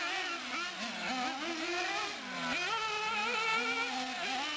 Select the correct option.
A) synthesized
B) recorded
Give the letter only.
B